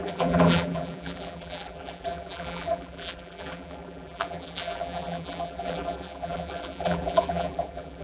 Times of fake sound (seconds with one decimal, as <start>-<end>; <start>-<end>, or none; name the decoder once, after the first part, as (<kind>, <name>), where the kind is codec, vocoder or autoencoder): 0.0-8.0 (vocoder, BigVGAN v2)